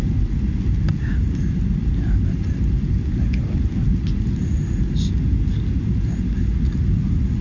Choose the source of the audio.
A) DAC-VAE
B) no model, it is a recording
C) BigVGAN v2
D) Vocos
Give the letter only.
B